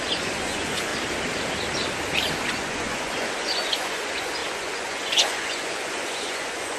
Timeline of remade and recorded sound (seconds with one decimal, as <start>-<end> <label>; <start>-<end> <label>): 0.0-0.9 remade; 0.9-2.5 recorded; 2.5-6.8 remade

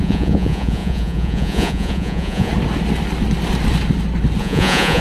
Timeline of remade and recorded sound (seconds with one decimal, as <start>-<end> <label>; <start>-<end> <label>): 0.0-2.5 remade; 2.5-4.4 recorded; 4.4-5.0 remade

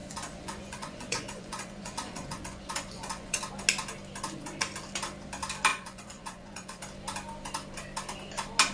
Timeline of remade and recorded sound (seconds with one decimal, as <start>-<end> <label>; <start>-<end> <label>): 0.0-3.4 remade; 3.4-5.7 recorded; 5.7-6.8 remade; 6.8-8.7 recorded

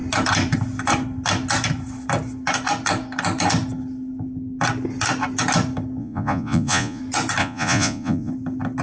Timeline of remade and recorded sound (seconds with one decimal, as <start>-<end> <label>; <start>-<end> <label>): 0.0-6.0 recorded; 6.0-7.0 remade; 7.0-7.4 recorded; 7.4-8.3 remade; 8.3-8.8 recorded

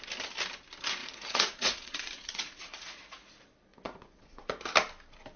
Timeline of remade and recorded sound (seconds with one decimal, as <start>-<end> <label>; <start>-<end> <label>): 0.0-1.0 recorded; 1.0-3.3 remade; 3.3-3.7 recorded; 3.7-4.6 remade; 4.6-5.4 recorded

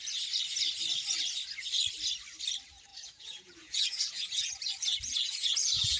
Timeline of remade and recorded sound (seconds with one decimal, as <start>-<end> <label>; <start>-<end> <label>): 0.0-2.9 recorded; 2.9-6.0 remade

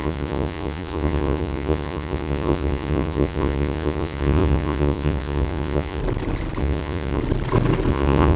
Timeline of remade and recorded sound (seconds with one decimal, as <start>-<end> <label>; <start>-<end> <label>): 0.0-6.0 remade; 6.0-6.6 recorded; 6.6-7.2 remade; 7.2-7.9 recorded; 7.9-8.4 remade

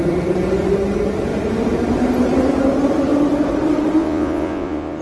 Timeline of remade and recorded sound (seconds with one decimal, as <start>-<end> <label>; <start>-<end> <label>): 0.0-4.0 recorded; 4.0-5.0 remade